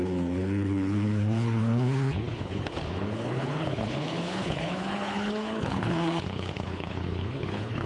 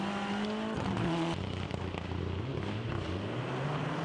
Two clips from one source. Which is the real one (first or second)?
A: second